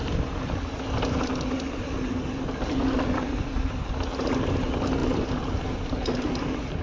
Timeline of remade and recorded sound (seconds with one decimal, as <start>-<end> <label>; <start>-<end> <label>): 0.0-6.8 recorded